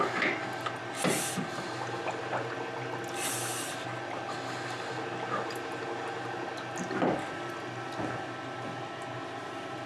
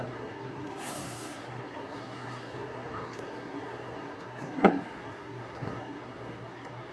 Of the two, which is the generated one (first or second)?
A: second